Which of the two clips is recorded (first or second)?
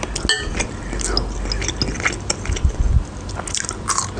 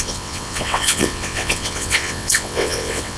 first